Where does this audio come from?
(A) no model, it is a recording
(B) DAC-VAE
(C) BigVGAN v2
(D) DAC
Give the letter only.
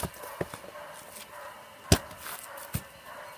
A